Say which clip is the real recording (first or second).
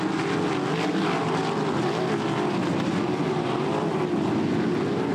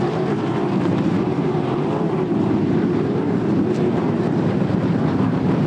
first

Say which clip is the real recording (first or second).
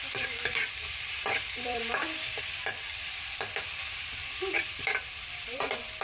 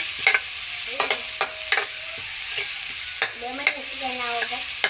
second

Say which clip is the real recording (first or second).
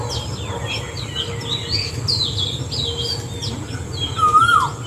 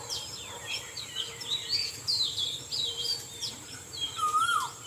first